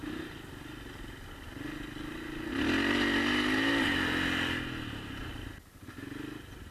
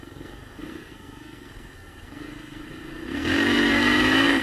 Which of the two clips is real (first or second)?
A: first